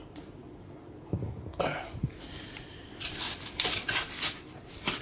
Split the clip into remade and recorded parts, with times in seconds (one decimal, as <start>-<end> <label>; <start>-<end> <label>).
0.0-5.0 remade